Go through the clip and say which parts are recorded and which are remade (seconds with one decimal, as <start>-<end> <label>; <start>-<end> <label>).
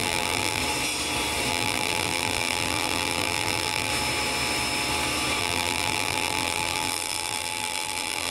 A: 0.0-0.6 remade; 0.6-1.5 recorded; 1.5-3.9 remade; 3.9-5.4 recorded; 5.4-8.3 remade